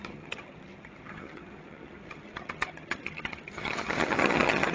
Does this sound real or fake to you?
fake